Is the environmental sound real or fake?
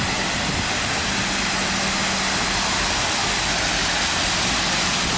real